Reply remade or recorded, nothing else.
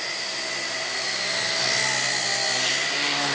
recorded